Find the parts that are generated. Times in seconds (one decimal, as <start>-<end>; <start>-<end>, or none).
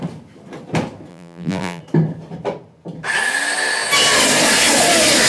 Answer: 1.1-1.8